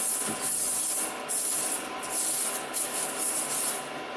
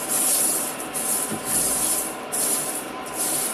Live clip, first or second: first